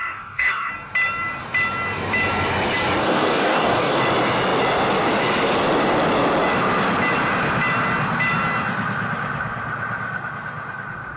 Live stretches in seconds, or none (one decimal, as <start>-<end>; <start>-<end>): 0.7-3.0; 4.0-11.2